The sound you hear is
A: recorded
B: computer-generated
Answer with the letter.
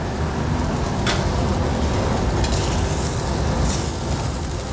A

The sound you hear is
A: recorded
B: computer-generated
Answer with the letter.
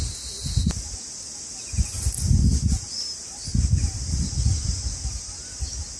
A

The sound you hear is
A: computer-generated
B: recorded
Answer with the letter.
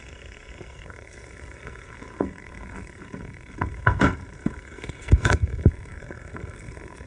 A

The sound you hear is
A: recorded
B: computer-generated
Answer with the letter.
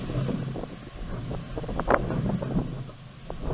A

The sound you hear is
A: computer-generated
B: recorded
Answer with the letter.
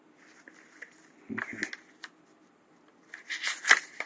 B